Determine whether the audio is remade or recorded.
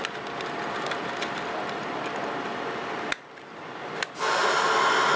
recorded